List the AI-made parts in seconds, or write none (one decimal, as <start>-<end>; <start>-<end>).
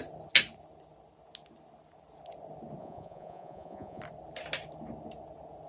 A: 2.8-4.0